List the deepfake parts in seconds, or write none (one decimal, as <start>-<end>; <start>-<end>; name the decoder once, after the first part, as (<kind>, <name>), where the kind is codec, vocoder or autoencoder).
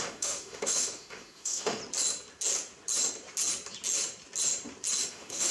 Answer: 0.0-1.8 (autoencoder, DAC-VAE); 5.1-5.5